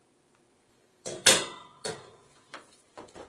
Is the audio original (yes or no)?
no